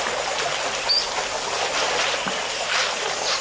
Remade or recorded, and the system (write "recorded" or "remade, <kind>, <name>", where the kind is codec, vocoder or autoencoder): recorded